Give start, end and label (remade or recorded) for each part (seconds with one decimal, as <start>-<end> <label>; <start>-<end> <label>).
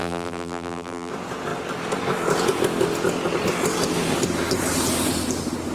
0.0-1.1 remade; 1.1-5.7 recorded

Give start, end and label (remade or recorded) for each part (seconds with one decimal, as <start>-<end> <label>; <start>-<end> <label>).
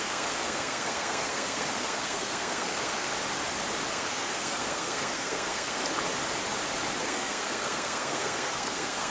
0.0-3.1 remade; 3.1-3.9 recorded; 3.9-5.8 remade; 5.8-7.0 recorded; 7.0-9.1 remade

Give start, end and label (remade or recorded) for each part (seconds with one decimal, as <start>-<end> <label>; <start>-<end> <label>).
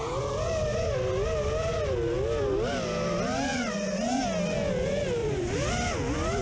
0.0-3.5 recorded; 3.5-4.2 remade; 4.2-5.2 recorded; 5.2-5.7 remade; 5.7-6.4 recorded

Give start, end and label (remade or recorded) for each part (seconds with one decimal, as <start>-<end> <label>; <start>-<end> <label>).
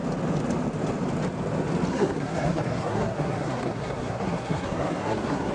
0.0-1.9 recorded; 1.9-5.5 remade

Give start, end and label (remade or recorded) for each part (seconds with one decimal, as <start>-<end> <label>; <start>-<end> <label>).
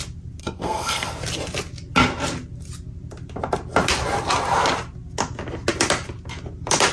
0.0-0.4 recorded; 0.4-1.1 remade; 1.1-6.9 recorded